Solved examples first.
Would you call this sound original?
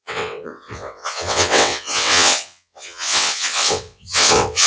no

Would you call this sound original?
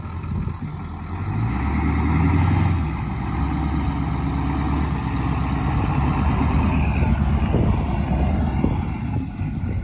yes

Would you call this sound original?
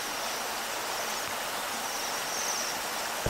yes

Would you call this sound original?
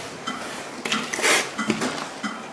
yes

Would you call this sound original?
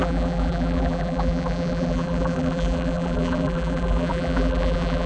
no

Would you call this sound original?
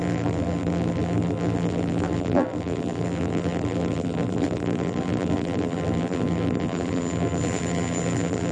no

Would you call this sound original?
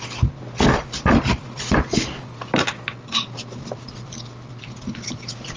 yes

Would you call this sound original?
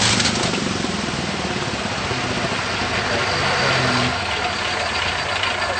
yes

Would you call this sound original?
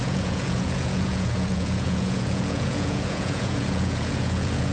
no